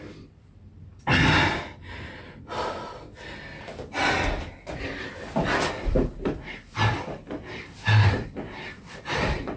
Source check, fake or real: fake